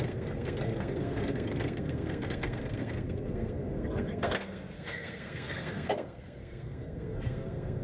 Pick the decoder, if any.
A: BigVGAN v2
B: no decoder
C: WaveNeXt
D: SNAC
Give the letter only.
D